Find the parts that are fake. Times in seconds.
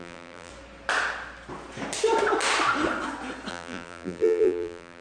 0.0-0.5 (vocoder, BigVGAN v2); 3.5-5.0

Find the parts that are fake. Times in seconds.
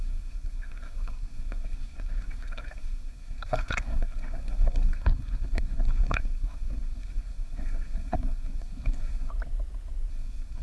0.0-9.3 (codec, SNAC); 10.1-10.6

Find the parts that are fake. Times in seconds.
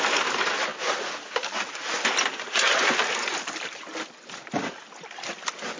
none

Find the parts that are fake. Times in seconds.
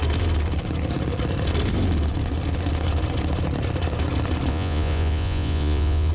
4.5-6.1 (vocoder, Vocos)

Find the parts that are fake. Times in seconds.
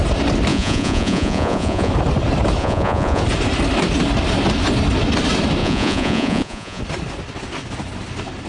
0.5-1.9 (vocoder, Vocos); 2.6-3.2; 5.6-6.8